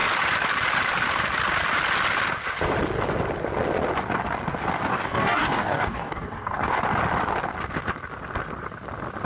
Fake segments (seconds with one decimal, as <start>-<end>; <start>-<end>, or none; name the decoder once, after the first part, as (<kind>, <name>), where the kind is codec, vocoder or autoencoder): 4.9-6.8 (codec, DAC)